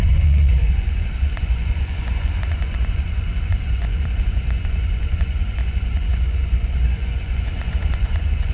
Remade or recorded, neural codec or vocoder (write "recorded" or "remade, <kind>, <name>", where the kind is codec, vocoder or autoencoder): remade, vocoder, Vocos